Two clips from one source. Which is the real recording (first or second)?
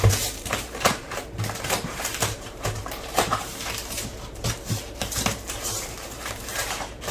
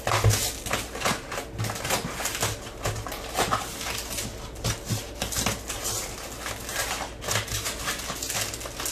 second